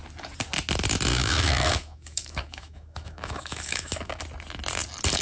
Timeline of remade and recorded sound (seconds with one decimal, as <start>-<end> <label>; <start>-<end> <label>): 0.0-1.1 recorded; 1.1-4.2 remade; 4.2-5.2 recorded